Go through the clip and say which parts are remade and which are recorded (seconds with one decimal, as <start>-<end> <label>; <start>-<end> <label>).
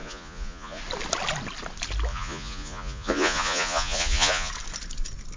0.0-0.8 remade; 0.8-2.1 recorded; 2.1-4.5 remade; 4.5-5.4 recorded